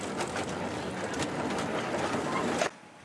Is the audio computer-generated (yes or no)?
no